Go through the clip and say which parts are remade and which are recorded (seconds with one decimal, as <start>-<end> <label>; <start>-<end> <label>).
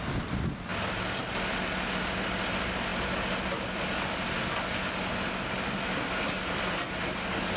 0.0-7.6 recorded